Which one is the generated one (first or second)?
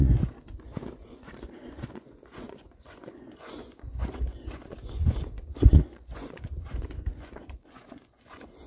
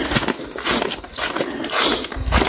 first